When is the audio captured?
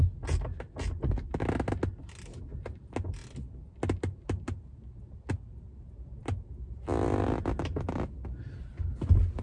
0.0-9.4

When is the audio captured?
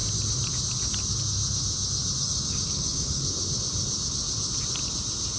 0.0-2.2; 3.2-5.4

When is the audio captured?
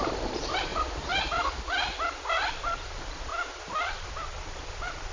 0.7-2.5; 3.3-3.9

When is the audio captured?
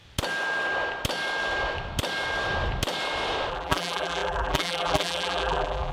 0.0-3.5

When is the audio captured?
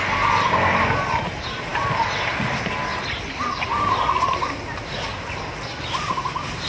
0.0-1.7; 2.5-2.9; 4.5-6.7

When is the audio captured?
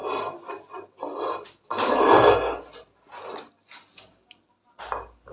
0.0-5.3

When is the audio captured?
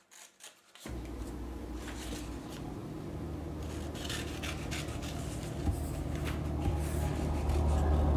0.0-8.2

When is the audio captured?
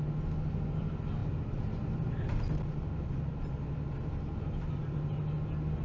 0.0-5.8